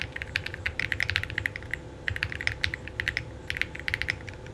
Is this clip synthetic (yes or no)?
no